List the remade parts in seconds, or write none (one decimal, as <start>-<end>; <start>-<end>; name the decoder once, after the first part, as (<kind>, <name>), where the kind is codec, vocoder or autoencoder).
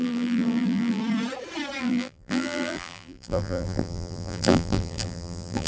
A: 0.0-1.0 (vocoder, BigVGAN v2); 1.8-5.7